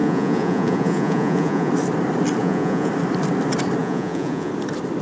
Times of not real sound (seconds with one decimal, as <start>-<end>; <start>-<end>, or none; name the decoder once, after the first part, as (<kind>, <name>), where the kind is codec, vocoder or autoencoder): 0.0-1.7 (vocoder, Vocos); 2.4-2.9; 3.8-4.5